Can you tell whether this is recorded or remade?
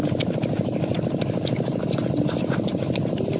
recorded